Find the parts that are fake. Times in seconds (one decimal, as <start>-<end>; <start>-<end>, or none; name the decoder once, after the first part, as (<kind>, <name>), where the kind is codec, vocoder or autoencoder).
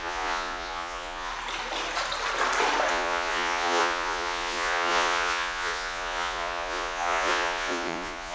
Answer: 0.0-1.3 (vocoder, Vocos); 2.9-8.3